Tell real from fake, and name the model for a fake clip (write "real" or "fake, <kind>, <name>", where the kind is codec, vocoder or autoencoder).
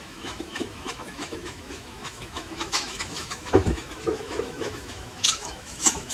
fake, autoencoder, DAC-VAE